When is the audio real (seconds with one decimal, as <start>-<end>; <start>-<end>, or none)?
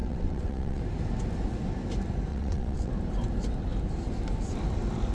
0.8-2.3; 2.9-5.1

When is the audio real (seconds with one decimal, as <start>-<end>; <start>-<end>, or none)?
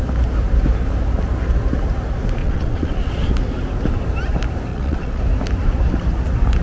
0.0-2.4; 3.1-4.7; 5.2-6.6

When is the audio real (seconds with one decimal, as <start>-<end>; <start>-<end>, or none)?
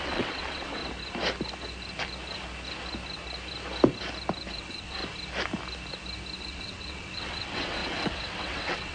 0.8-4.5; 5.0-6.4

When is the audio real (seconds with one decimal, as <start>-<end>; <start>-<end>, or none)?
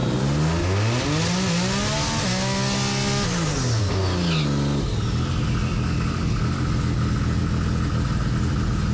0.0-8.9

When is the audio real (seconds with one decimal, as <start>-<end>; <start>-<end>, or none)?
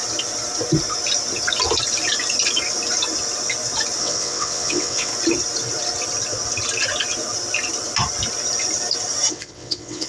0.0-4.0; 5.1-9.3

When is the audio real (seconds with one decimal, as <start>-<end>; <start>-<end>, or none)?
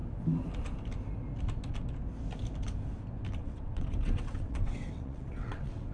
0.0-3.4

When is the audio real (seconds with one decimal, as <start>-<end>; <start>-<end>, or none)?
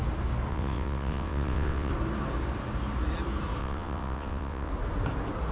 0.0-0.5; 1.9-3.6; 4.7-5.5